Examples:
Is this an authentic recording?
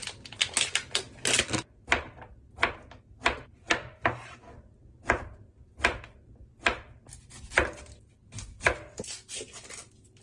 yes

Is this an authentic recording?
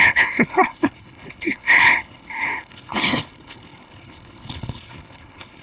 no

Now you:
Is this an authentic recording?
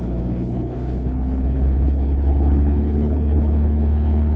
no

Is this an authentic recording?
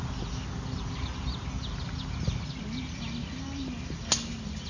yes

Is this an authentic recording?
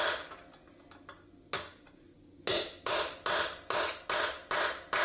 yes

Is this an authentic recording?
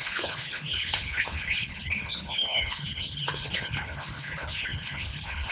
no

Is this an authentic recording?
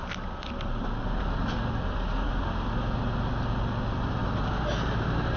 yes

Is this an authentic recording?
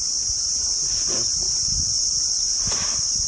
yes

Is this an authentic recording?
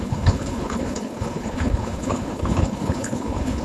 no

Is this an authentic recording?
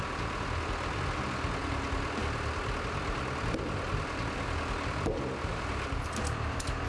yes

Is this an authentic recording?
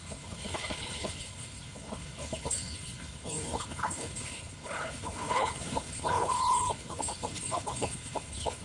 no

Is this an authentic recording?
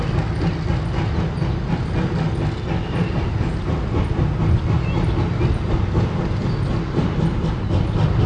yes